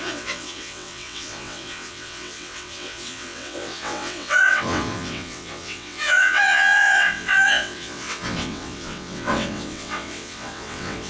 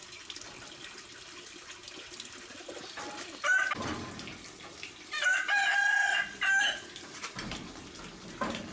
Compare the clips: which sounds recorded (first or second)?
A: second